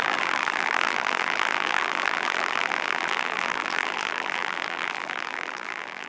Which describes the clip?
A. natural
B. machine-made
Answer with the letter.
B